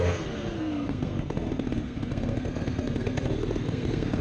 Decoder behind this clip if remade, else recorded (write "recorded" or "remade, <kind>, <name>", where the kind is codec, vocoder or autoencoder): remade, codec, SNAC